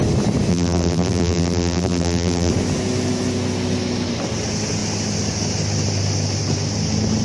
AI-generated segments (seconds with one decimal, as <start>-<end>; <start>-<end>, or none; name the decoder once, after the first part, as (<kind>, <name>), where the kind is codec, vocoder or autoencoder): 0.5-2.5 (vocoder, BigVGAN v2)